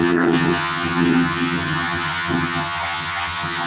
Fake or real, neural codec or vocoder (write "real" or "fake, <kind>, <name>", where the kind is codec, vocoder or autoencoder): fake, vocoder, HiFi-GAN